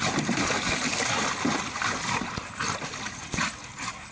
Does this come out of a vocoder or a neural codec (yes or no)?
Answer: no